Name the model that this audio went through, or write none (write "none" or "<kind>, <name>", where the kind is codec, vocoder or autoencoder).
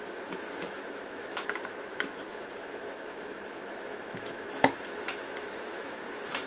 autoencoder, DAC-VAE